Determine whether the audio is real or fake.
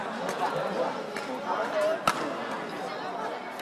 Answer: real